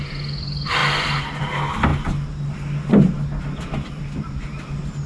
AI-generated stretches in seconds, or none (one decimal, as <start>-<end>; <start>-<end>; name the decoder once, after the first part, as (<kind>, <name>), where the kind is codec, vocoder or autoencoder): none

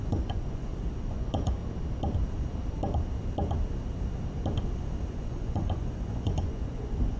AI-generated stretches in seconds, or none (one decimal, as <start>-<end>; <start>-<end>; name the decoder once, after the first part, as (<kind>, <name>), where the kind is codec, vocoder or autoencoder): 0.0-0.7 (vocoder, Vocos); 1.2-1.6; 5.1-7.2

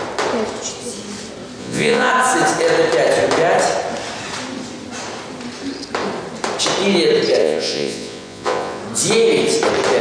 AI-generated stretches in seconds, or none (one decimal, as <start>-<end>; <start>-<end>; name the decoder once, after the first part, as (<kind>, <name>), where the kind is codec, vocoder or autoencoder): 1.6-2.1 (vocoder, Vocos); 7.4-8.8